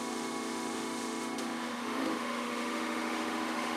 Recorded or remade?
remade